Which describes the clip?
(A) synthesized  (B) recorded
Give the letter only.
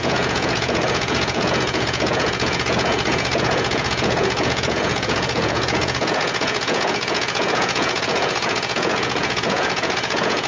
A